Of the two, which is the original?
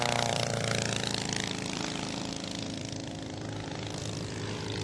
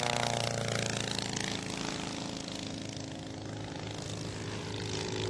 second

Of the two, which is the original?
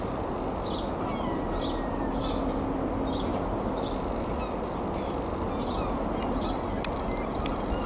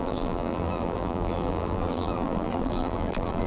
first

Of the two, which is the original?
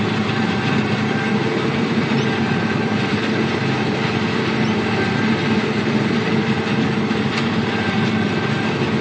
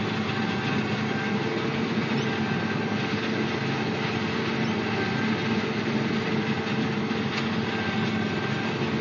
second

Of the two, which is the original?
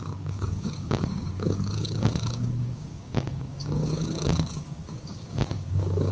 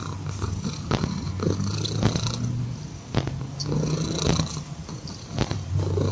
second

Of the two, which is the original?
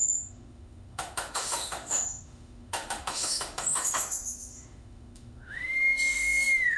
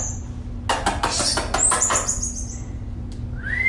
second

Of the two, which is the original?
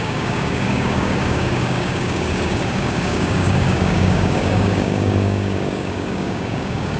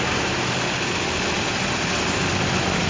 second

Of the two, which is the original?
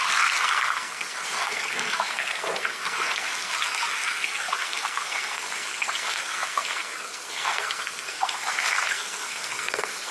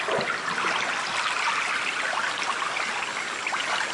second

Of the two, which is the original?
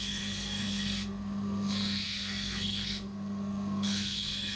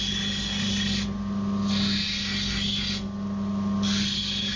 second